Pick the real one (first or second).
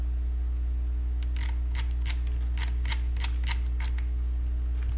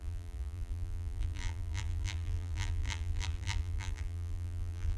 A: first